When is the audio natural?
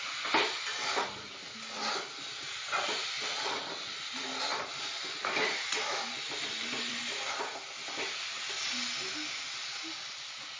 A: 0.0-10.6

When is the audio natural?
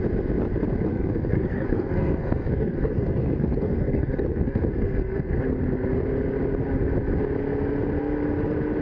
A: 0.0-0.9; 5.4-8.8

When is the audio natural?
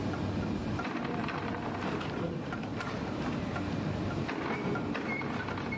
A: 0.0-0.6; 4.1-5.8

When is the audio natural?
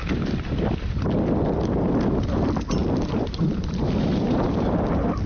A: 1.5-2.8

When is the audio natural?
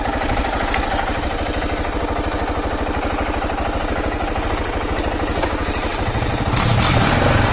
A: 0.0-7.5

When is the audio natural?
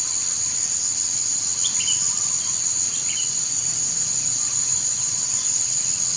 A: 0.0-3.3; 5.6-6.2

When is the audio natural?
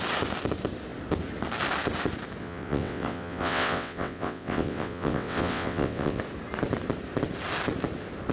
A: 0.0-2.4; 6.2-8.3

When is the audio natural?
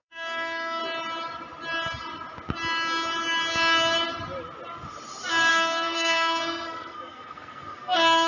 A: 0.8-5.5